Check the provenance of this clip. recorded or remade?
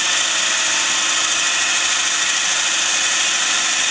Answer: recorded